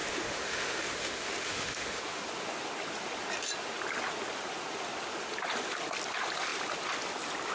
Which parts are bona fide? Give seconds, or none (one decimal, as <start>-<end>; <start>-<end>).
2.2-7.5